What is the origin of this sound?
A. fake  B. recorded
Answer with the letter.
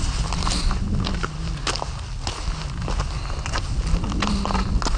B